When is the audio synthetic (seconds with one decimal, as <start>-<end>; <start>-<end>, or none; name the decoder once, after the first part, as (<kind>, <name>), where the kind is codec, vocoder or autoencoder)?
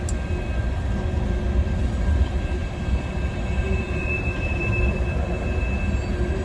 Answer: 1.8-5.6 (vocoder, BigVGAN v2)